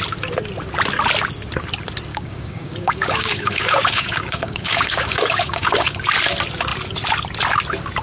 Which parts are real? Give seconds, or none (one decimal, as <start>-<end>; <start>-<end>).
0.0-2.1; 6.0-8.0